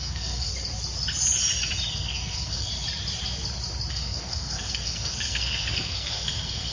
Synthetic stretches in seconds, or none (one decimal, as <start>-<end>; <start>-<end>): 0.0-0.5; 1.9-2.7; 3.9-6.7